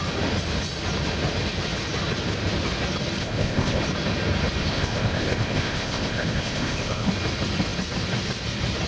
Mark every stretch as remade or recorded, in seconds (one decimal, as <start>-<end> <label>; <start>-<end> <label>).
0.0-3.2 recorded; 3.2-3.8 remade; 3.8-4.6 recorded; 4.6-7.1 remade; 7.1-8.9 recorded